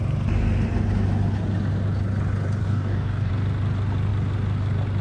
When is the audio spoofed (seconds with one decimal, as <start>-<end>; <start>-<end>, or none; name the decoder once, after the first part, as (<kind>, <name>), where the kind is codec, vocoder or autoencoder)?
2.6-3.3 (codec, DAC)

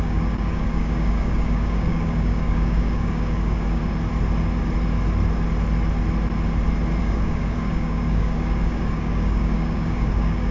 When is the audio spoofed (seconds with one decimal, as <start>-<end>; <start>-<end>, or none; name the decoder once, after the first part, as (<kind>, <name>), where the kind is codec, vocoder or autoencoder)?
0.0-3.8 (codec, DAC); 7.0-10.5

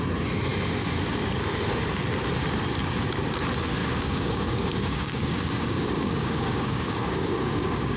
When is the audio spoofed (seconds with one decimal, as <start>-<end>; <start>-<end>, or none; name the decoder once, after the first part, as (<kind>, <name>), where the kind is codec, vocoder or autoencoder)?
3.8-8.0 (codec, DAC)

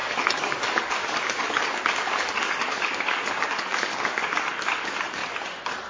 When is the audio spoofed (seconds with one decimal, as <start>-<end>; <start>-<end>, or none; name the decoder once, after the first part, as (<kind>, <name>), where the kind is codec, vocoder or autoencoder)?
0.0-5.2 (codec, DAC)

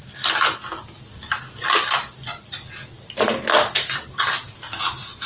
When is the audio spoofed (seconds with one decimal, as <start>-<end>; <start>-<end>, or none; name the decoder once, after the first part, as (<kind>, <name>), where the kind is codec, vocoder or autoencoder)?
none

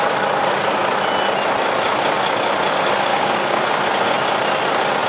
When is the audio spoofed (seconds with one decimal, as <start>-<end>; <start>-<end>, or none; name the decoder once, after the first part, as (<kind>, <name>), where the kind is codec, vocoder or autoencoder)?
3.1-3.6 (codec, DAC)